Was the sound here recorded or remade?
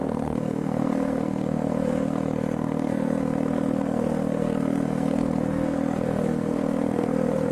remade